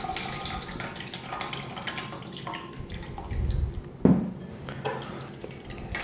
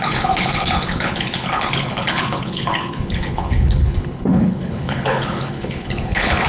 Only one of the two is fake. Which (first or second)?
second